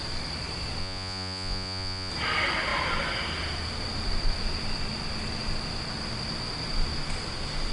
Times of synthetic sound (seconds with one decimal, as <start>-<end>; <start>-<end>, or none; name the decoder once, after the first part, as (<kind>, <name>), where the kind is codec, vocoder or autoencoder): 0.8-2.1 (vocoder, Vocos)